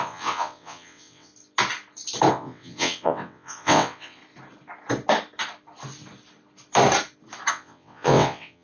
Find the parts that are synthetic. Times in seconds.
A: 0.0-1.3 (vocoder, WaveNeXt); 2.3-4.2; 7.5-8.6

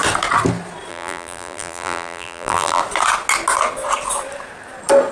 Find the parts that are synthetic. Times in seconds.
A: 0.9-2.8 (vocoder, BigVGAN v2)

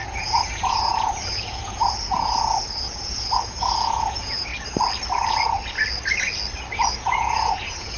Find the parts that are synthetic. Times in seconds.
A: 0.0-4.5 (vocoder, Vocos); 6.9-8.0

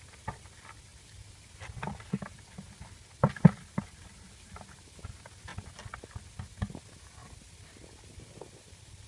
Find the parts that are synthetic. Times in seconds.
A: none